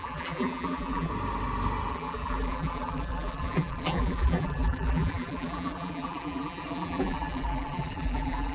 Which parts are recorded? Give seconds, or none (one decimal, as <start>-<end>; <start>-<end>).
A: 1.1-1.9